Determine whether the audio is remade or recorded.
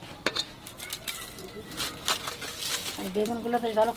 recorded